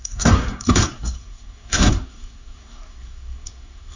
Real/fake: fake